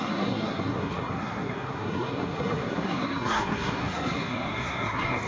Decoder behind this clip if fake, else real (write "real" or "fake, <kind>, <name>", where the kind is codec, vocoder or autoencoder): fake, codec, SNAC